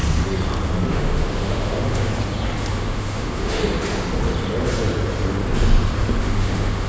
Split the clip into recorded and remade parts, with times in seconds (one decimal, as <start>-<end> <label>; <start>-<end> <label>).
0.0-0.9 recorded; 0.9-2.1 remade; 2.1-2.7 recorded; 2.7-3.6 remade; 3.6-6.2 recorded; 6.2-6.9 remade